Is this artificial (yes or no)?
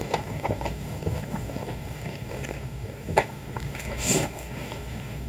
yes